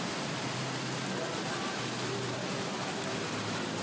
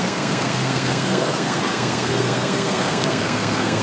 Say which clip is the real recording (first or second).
first